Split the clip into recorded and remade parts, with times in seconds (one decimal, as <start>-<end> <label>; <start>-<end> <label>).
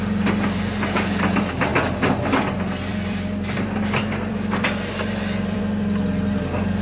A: 0.0-2.9 recorded; 2.9-5.6 remade; 5.6-6.8 recorded